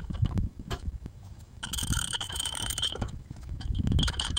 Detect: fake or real fake